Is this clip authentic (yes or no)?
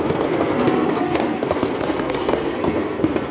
no